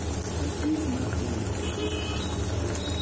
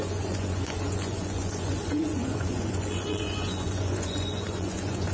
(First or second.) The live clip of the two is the first